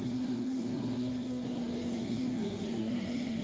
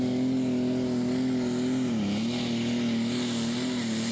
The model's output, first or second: first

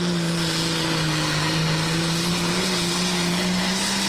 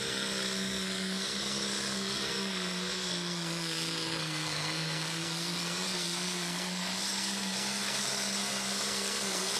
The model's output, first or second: second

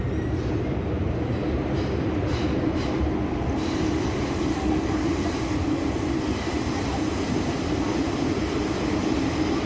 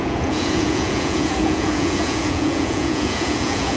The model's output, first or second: second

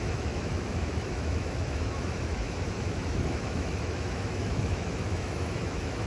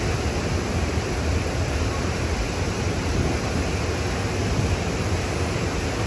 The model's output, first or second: first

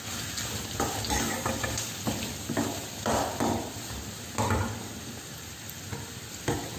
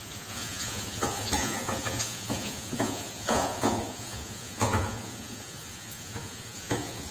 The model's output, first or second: second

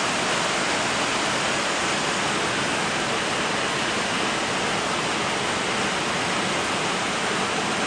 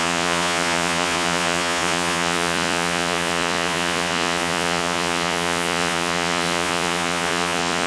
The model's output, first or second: second